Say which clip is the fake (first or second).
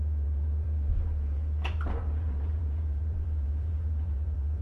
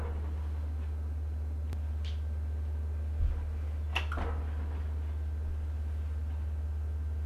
first